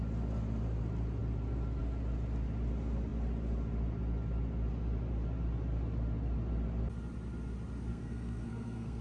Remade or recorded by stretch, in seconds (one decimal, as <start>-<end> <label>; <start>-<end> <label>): 0.0-7.9 recorded; 7.9-9.0 remade